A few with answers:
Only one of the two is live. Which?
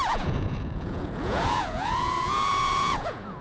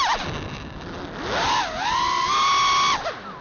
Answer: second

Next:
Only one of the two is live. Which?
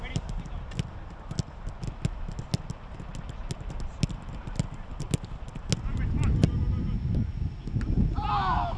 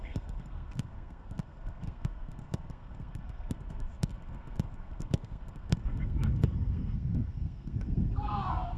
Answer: first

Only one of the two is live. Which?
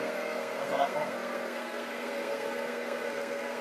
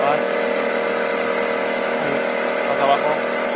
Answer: second